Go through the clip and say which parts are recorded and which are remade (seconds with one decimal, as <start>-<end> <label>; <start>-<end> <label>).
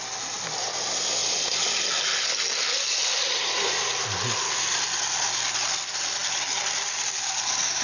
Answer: 0.0-7.8 recorded